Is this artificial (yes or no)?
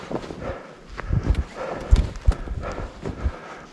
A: no